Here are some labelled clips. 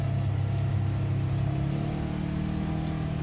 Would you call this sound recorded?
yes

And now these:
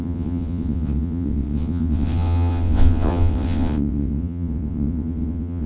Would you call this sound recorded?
no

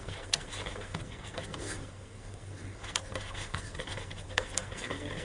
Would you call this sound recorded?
no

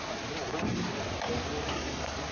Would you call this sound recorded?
yes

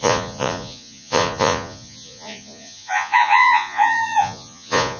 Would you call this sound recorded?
no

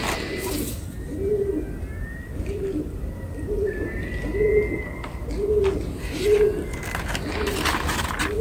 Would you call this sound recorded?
yes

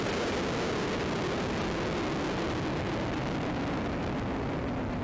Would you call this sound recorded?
yes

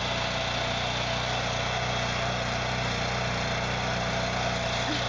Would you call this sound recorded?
yes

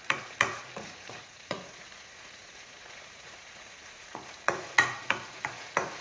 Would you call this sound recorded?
no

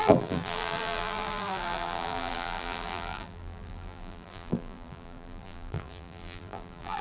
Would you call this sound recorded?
no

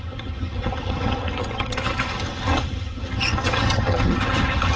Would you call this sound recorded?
no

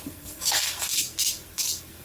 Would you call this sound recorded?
no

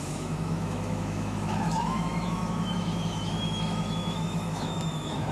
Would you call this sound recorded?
no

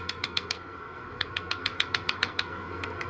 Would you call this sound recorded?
no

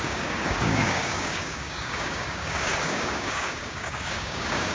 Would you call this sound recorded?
no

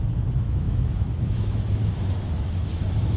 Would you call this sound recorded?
no